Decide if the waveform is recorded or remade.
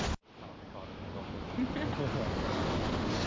recorded